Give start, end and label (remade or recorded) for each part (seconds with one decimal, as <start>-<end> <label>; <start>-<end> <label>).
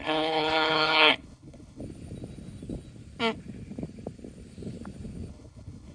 0.0-1.8 remade; 1.8-5.3 recorded; 5.3-5.9 remade